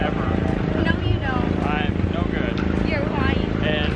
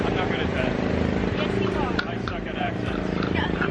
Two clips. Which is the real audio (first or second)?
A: first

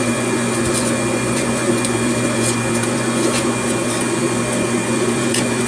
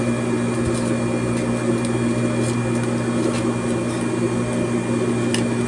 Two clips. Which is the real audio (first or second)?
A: second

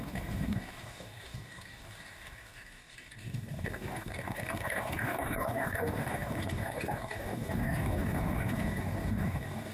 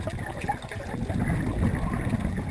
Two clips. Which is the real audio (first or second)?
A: second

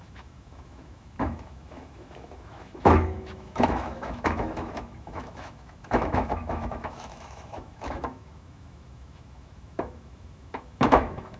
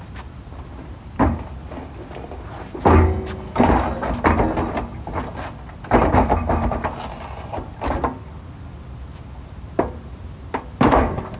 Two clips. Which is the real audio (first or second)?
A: second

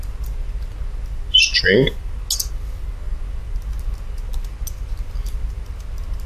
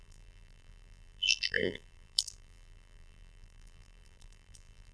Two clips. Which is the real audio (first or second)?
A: first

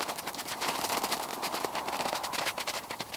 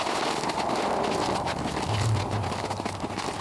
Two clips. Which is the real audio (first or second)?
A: second